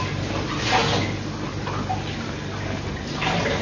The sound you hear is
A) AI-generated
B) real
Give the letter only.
B